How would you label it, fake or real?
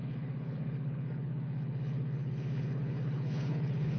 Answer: fake